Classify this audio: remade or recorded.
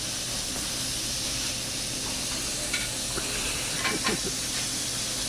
recorded